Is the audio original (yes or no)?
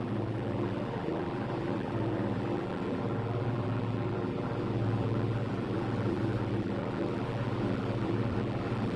no